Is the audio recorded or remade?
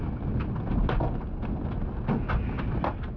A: recorded